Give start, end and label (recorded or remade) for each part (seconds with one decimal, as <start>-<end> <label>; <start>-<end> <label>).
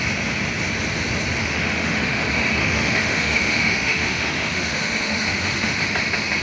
0.0-1.4 recorded; 1.4-2.2 remade; 2.2-2.6 recorded; 2.6-5.8 remade; 5.8-6.4 recorded